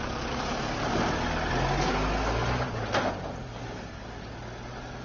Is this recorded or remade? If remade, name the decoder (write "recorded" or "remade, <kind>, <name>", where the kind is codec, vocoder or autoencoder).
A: recorded